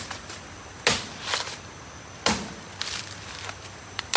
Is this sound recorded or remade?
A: recorded